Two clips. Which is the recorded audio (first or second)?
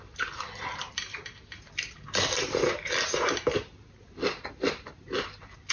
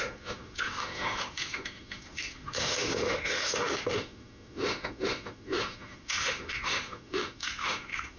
first